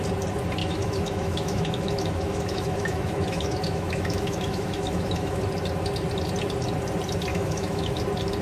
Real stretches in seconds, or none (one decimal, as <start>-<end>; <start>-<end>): 0.0-0.6; 5.4-7.3; 8.0-8.4